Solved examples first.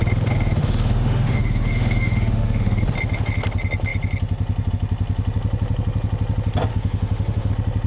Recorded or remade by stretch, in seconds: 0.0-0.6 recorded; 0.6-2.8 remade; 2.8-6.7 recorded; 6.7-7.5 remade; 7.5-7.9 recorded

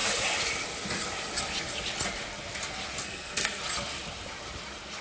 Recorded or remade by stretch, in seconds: 0.0-3.0 recorded; 3.0-3.6 remade; 3.6-5.0 recorded

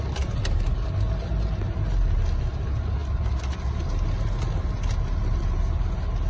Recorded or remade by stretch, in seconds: 0.0-6.3 recorded

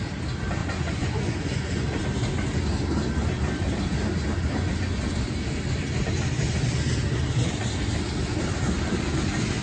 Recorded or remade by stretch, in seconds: 0.0-0.6 recorded; 0.6-2.0 remade; 2.0-9.6 recorded